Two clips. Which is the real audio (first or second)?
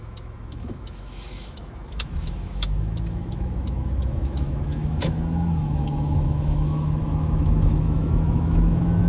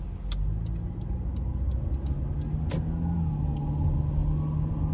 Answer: second